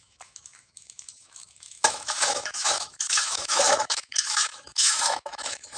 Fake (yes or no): yes